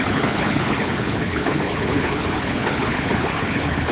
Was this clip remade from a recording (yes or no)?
yes